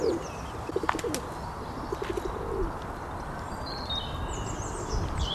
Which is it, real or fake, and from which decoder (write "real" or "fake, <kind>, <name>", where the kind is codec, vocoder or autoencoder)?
real